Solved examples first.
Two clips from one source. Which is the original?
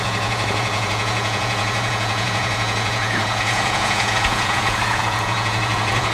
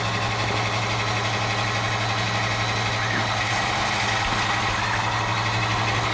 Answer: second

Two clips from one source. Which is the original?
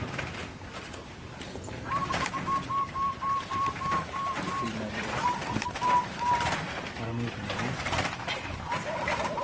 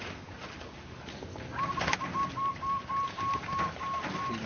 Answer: second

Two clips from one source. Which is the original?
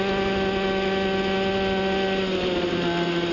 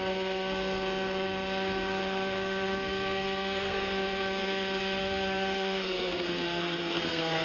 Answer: first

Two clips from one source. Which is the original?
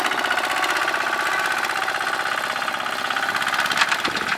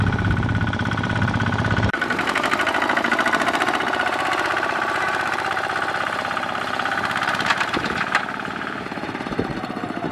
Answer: first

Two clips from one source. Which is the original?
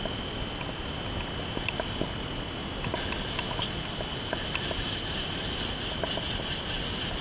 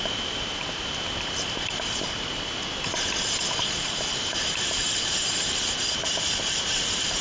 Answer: first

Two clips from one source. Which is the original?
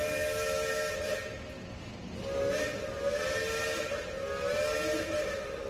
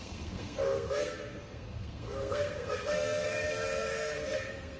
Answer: first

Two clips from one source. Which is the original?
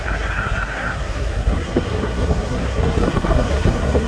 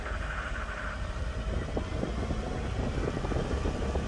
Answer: second